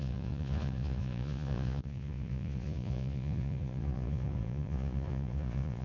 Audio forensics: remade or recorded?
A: remade